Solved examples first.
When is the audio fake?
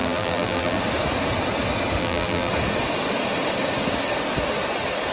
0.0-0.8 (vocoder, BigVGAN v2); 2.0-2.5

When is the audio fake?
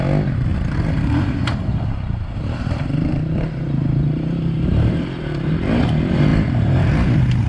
0.5-5.0 (vocoder, BigVGAN v2); 6.3-7.5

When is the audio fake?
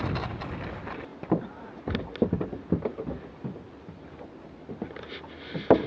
none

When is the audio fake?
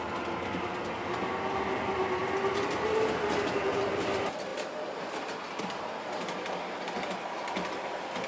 none